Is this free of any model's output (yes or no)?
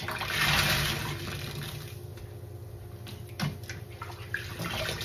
yes